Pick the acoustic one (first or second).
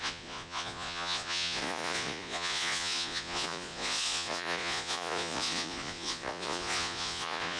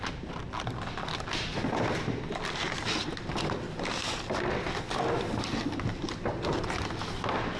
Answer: second